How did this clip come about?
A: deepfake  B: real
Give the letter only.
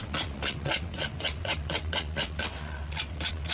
A